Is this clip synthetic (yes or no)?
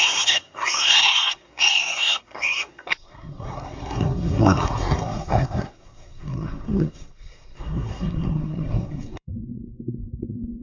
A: yes